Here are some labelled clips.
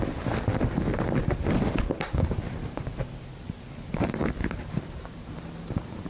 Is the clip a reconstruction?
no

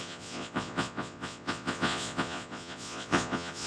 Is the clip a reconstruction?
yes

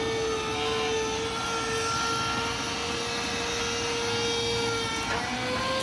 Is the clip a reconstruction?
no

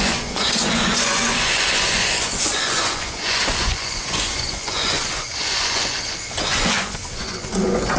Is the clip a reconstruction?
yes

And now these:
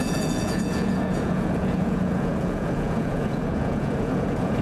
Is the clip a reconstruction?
yes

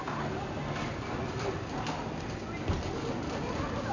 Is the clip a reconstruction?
no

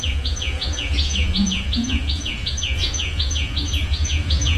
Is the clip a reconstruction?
yes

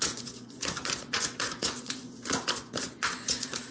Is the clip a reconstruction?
yes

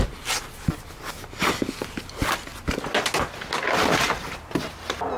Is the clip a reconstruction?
no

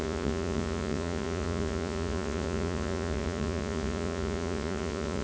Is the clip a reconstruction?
yes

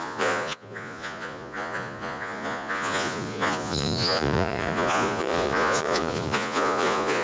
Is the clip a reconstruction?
yes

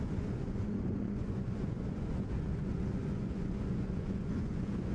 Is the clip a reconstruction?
yes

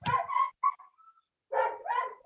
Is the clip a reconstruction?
no